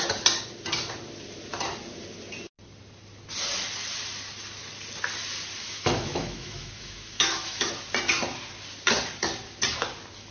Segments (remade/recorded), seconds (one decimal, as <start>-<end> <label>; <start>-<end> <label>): 0.0-5.6 recorded; 5.6-7.7 remade; 7.7-10.3 recorded